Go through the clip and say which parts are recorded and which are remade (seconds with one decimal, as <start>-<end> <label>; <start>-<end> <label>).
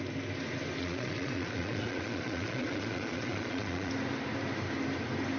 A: 0.0-0.8 recorded; 0.8-3.9 remade; 3.9-5.4 recorded